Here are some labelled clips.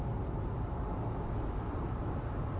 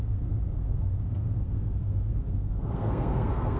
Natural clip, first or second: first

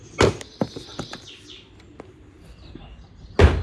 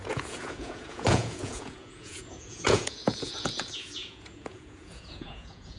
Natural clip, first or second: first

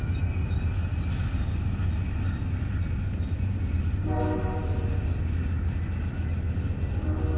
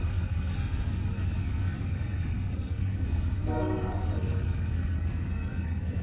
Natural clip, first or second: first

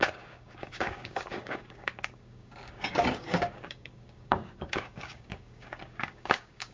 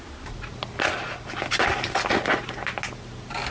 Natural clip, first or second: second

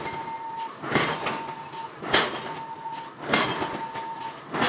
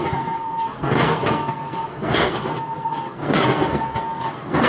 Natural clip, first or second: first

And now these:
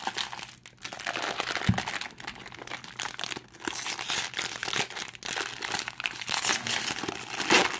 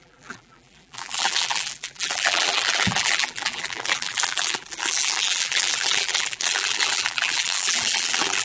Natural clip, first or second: first